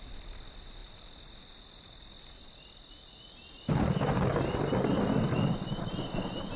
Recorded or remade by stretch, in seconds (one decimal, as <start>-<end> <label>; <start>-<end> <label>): 0.0-6.6 recorded